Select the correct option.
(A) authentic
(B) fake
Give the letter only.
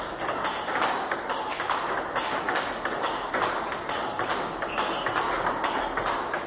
A